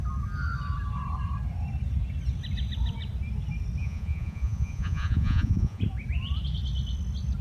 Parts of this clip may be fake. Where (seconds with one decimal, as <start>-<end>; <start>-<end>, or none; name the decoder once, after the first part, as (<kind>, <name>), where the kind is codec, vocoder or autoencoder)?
3.8-5.8 (vocoder, Vocos)